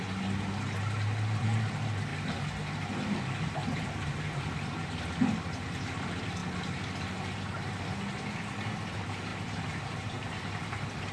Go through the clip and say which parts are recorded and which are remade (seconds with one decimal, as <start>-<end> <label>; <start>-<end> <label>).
0.0-9.3 remade; 9.3-10.0 recorded; 10.0-11.1 remade